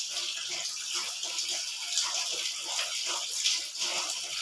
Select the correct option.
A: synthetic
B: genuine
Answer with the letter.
B